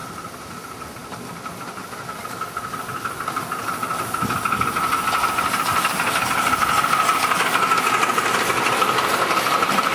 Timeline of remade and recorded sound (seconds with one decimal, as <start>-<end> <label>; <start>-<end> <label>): 0.0-0.6 remade; 0.6-1.0 recorded; 1.0-5.5 remade; 5.5-9.1 recorded; 9.1-9.9 remade